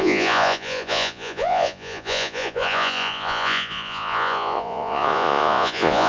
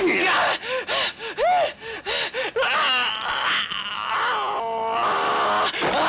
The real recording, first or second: second